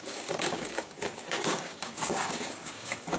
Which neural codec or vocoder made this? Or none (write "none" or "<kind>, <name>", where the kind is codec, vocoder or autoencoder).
codec, DAC